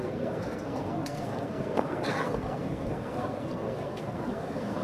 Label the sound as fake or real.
fake